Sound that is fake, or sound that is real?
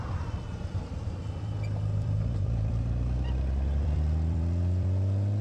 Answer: fake